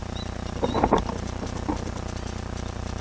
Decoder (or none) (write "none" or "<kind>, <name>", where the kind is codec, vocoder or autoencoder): none